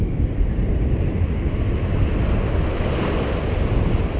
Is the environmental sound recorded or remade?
recorded